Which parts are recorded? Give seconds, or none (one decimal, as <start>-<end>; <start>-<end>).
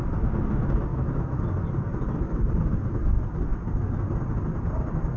0.0-0.9; 1.4-5.2